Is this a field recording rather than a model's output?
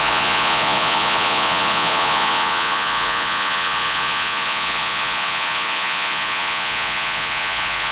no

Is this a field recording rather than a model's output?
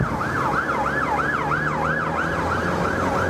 yes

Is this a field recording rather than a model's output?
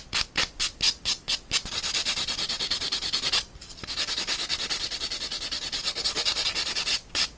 yes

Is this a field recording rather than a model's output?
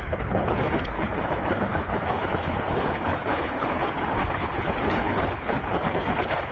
no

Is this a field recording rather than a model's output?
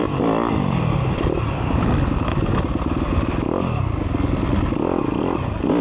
yes